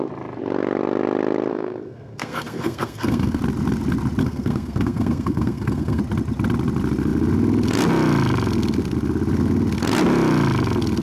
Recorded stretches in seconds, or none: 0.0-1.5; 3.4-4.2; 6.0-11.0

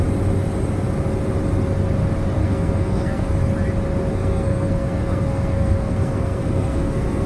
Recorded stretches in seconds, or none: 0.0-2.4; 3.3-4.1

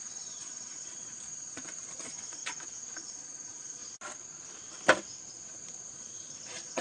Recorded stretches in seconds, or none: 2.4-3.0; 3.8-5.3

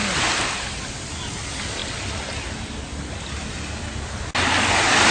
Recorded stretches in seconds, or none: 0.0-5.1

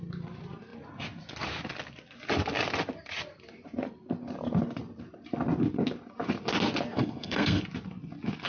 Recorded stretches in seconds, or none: 0.0-6.9; 7.6-8.5

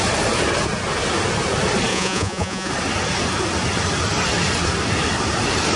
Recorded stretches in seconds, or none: 0.0-1.9; 2.7-5.8

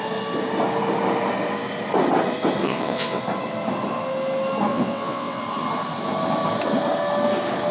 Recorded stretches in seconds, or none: 0.0-2.6; 3.2-4.7; 5.4-7.7